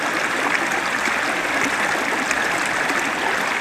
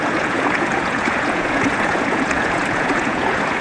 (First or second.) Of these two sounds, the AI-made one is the second